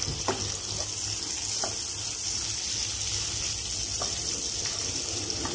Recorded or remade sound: recorded